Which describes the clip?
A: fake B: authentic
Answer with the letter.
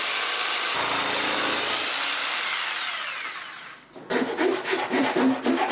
B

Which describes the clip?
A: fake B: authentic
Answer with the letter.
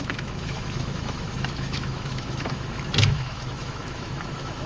A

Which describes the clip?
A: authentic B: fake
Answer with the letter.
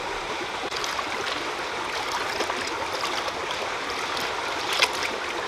A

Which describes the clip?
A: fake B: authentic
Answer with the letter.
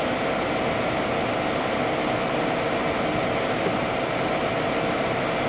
B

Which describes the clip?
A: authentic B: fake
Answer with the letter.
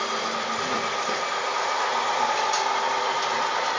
A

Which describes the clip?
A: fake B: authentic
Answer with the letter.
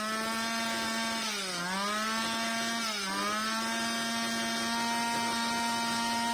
B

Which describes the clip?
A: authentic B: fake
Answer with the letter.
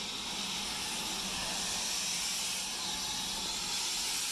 A